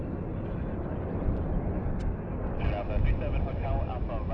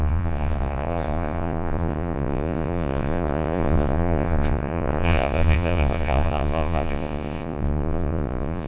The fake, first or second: second